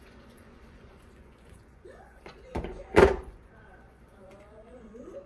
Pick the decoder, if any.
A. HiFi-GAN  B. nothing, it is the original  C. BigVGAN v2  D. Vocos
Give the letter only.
D